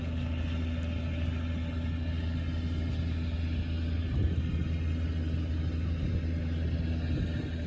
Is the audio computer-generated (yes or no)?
no